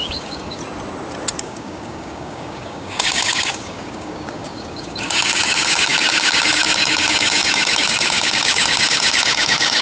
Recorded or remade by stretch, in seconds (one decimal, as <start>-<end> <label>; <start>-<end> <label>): 0.0-0.6 remade; 0.6-1.4 recorded; 1.4-9.8 remade